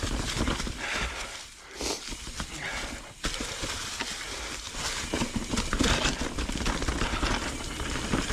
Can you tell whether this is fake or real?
real